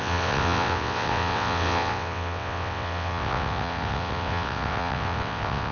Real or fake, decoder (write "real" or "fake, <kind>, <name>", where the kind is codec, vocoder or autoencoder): fake, vocoder, WaveNeXt